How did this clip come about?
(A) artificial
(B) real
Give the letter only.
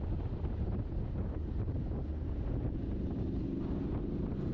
A